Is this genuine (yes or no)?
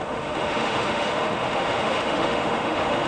no